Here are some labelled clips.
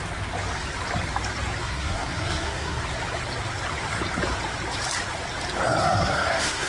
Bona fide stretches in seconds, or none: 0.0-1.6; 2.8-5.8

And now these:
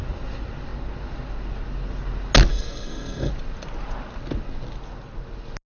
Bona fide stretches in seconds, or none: 0.0-2.5; 3.3-5.7

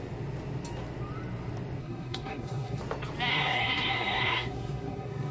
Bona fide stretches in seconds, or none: 0.0-1.8; 2.8-3.3